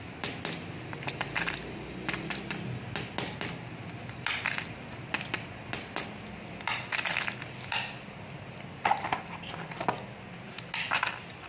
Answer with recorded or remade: recorded